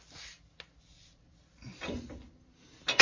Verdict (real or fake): real